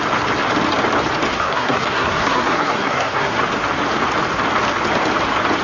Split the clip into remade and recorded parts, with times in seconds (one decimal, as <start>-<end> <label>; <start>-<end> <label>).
0.0-1.3 recorded; 1.3-3.4 remade; 3.4-5.6 recorded